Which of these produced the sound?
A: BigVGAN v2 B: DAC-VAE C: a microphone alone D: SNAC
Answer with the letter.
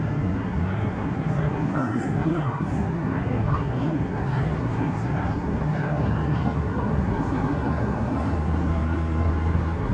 D